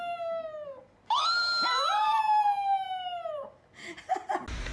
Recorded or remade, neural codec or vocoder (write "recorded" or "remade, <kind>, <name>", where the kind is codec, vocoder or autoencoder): recorded